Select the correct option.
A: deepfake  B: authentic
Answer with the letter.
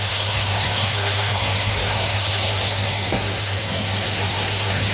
A